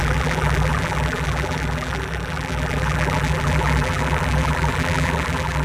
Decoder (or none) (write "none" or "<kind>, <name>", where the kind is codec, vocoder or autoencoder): vocoder, BigVGAN v2